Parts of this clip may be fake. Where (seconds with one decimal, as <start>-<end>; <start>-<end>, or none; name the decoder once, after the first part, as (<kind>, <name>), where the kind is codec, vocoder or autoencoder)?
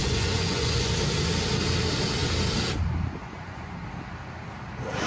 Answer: 0.0-0.9 (vocoder, Vocos); 3.2-3.8